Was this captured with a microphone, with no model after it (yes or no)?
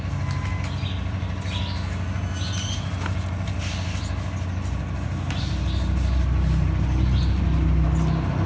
yes